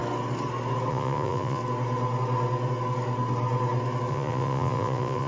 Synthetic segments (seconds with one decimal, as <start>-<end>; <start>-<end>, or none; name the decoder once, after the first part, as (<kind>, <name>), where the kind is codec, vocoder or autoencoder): 0.9-1.6 (vocoder, Vocos); 4.1-5.3